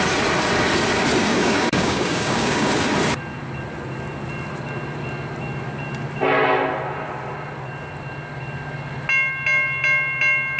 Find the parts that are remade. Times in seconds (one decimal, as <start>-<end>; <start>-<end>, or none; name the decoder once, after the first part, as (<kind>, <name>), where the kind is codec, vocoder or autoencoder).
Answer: 1.3-2.7 (codec, DAC)